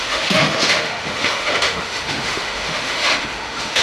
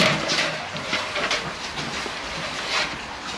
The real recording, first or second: second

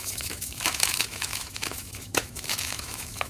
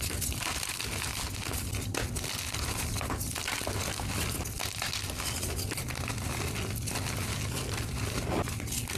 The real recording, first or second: second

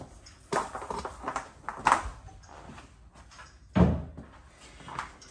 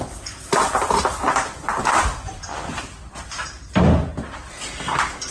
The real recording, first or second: first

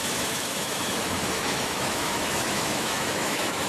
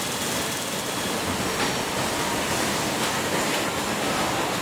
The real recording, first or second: second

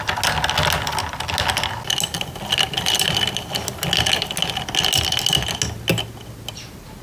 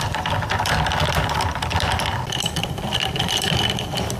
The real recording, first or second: first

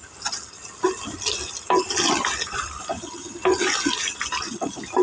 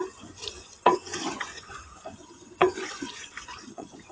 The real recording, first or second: first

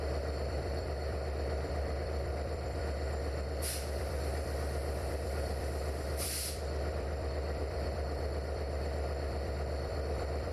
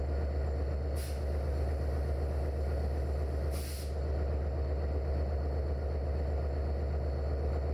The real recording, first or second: second